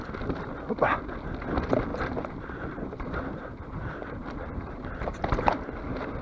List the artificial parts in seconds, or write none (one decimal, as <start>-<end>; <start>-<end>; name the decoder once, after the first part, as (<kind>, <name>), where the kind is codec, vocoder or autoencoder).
1.9-5.6 (vocoder, BigVGAN v2)